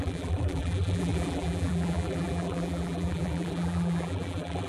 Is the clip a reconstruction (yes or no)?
yes